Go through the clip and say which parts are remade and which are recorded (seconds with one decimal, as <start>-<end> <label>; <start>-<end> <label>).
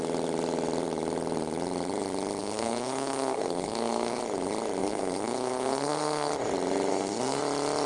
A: 0.0-2.4 recorded; 2.4-4.2 remade; 4.2-4.8 recorded; 4.8-6.3 remade; 6.3-6.9 recorded; 6.9-7.4 remade; 7.4-7.9 recorded